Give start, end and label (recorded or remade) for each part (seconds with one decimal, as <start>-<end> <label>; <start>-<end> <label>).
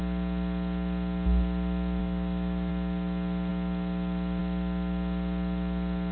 0.0-2.0 recorded; 2.0-2.7 remade; 2.7-6.1 recorded